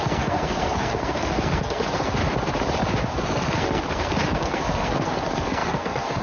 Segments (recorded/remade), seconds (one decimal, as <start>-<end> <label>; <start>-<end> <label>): 0.0-2.2 remade; 2.2-3.1 recorded; 3.1-6.2 remade